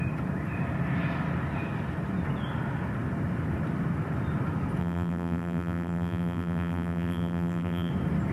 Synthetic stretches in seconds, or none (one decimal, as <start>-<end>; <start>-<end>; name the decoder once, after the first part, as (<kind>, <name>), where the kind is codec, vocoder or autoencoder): 4.8-7.9 (vocoder, BigVGAN v2)